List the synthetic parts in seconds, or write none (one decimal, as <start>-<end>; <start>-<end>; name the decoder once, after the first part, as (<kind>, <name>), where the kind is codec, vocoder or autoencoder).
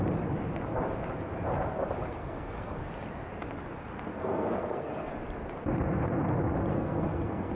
2.0-2.9 (codec, SNAC); 4.1-5.1; 6.7-7.5